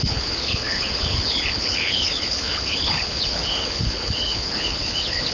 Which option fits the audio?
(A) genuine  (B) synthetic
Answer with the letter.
B